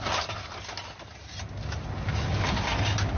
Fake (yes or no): no